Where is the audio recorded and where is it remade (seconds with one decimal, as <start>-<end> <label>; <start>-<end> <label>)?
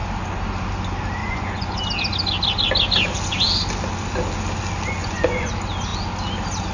0.0-1.2 recorded; 1.2-1.8 remade; 1.8-5.0 recorded; 5.0-5.5 remade; 5.5-6.7 recorded